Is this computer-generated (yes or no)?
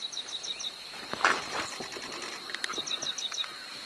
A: no